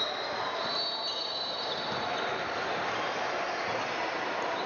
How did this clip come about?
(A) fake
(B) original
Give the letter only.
B